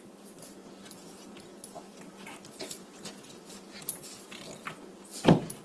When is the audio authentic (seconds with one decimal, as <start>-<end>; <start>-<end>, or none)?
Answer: 0.0-5.6